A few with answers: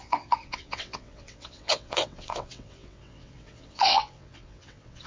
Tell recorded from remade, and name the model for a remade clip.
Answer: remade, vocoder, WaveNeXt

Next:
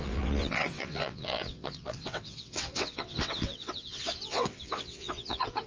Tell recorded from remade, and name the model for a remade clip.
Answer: remade, vocoder, WaveNeXt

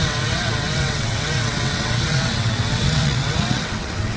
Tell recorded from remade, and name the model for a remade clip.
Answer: remade, vocoder, WaveNeXt